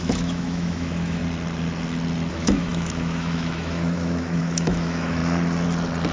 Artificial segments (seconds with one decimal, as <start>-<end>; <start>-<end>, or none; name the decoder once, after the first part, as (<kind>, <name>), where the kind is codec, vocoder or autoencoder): 0.0-1.2 (autoencoder, DAC-VAE); 2.3-5.2